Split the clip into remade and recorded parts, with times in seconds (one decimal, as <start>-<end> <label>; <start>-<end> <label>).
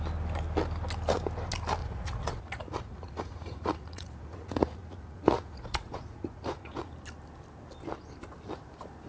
0.0-1.8 recorded; 1.8-6.9 remade; 6.9-9.1 recorded